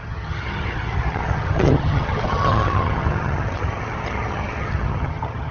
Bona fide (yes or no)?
no